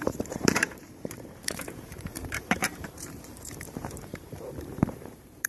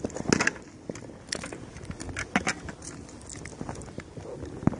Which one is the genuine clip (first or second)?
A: second